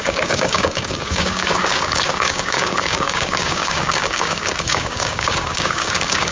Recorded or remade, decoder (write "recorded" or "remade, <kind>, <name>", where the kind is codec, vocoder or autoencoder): remade, codec, DAC